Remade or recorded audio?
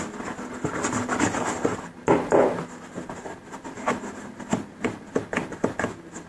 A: recorded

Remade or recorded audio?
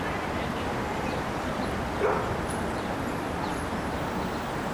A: recorded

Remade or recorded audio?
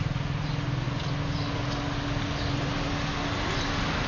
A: recorded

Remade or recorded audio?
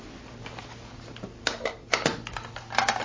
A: recorded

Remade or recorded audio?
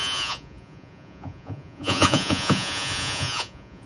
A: remade